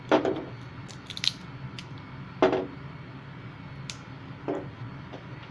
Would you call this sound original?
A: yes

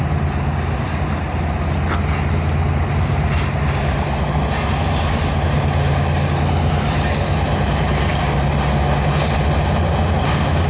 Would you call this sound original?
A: yes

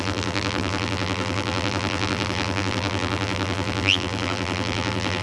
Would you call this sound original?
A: no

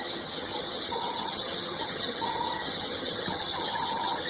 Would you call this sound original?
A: no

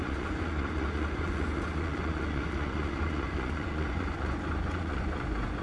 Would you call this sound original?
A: no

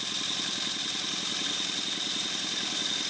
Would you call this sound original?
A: yes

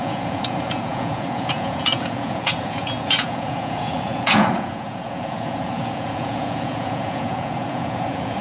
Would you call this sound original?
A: no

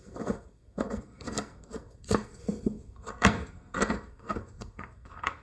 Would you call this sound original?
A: no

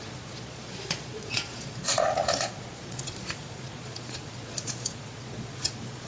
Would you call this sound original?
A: no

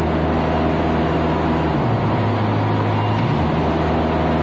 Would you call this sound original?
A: yes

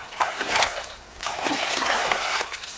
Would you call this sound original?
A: no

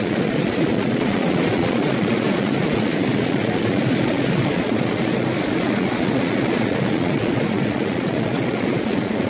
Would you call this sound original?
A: no